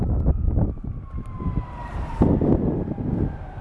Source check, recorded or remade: recorded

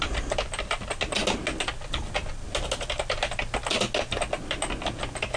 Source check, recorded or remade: recorded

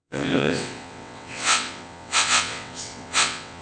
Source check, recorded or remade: remade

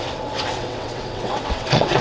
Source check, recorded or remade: remade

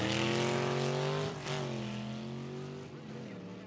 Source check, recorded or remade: recorded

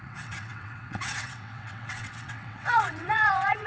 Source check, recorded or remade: remade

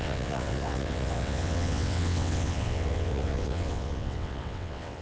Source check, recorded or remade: remade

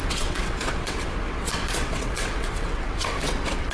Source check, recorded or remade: remade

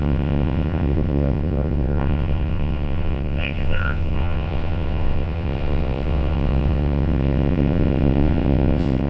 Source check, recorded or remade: remade